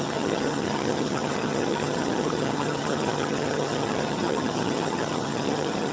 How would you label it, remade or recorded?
remade